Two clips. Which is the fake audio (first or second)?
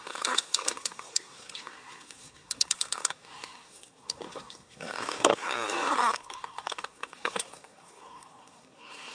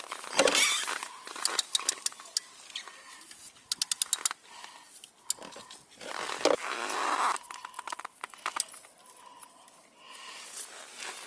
first